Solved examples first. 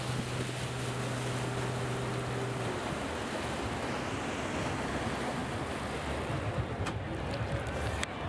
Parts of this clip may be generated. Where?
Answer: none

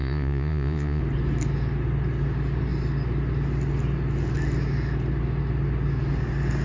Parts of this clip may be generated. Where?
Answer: 0.0-1.0

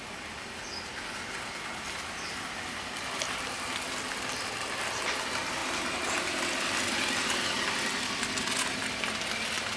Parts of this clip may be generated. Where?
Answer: none

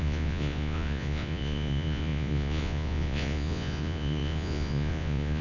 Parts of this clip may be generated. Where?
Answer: 0.0-5.4

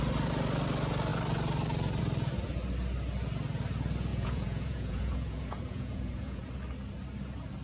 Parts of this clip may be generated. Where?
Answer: 4.1-6.5

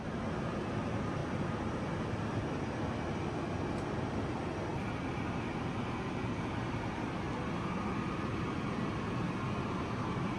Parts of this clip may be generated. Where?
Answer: none